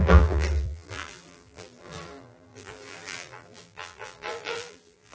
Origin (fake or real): fake